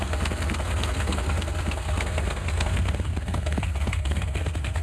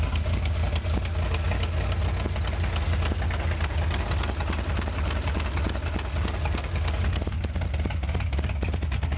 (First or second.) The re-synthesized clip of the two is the first